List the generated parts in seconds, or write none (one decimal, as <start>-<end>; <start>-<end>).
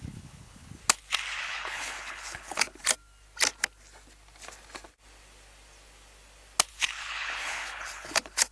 0.0-0.8; 1.4-2.8; 6.7-8.5